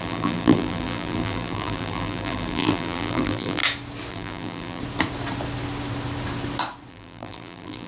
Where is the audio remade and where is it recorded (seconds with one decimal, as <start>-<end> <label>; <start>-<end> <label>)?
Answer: 0.0-3.6 remade; 3.6-4.1 recorded; 4.1-4.8 remade; 4.8-6.9 recorded; 6.9-7.9 remade